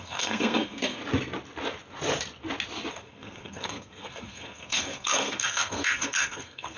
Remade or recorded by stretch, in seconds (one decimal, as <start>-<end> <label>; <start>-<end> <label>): 0.0-1.0 remade; 1.0-2.9 recorded; 2.9-6.8 remade